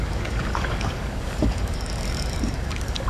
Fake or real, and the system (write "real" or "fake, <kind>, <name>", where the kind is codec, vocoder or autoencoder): fake, codec, DAC